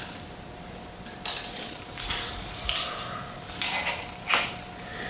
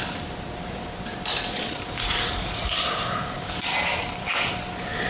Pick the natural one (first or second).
first